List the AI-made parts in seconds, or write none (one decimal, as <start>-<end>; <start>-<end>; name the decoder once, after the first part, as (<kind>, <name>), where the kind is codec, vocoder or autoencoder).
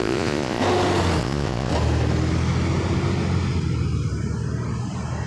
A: 0.0-0.6 (vocoder, Vocos); 1.2-1.7